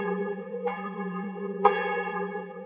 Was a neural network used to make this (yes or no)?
yes